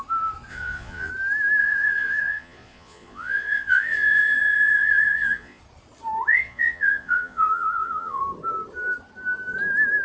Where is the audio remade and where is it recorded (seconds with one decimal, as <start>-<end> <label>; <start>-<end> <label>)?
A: 0.0-0.5 recorded; 0.5-1.1 remade; 1.1-1.6 recorded; 1.6-5.6 remade; 5.6-6.3 recorded; 6.3-8.2 remade; 8.2-10.0 recorded